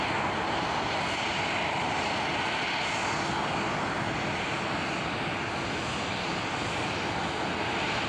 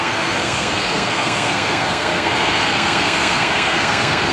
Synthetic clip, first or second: second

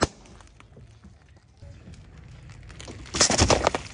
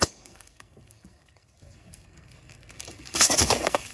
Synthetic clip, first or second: second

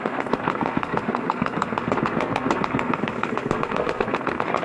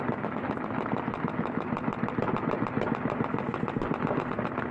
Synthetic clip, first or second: first